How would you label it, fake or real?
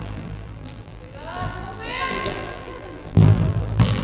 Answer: fake